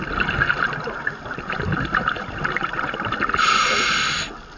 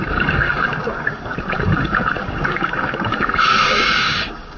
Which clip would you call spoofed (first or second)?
second